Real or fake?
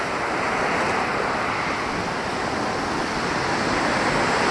real